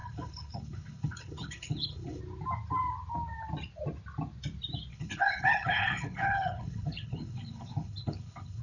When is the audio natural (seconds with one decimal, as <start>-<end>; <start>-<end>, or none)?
2.2-4.9